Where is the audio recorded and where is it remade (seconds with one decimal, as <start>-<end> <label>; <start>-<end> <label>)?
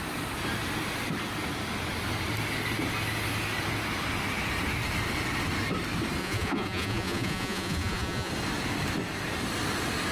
0.0-6.2 recorded; 6.2-8.3 remade; 8.3-10.1 recorded